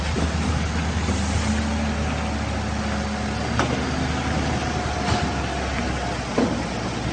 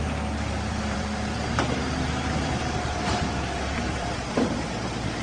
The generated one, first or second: second